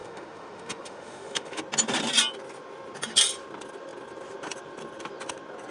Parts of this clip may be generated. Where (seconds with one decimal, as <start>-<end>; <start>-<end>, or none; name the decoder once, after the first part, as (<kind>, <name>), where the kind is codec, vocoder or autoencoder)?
0.0-1.6 (autoencoder, DAC-VAE)